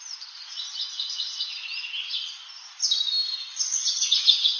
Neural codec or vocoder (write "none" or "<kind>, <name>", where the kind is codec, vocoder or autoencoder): none